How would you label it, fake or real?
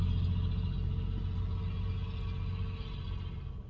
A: real